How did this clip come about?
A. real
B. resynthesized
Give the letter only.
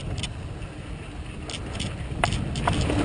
A